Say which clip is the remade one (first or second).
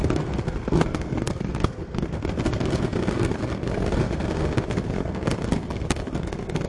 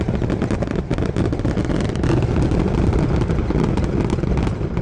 first